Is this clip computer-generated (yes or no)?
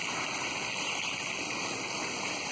no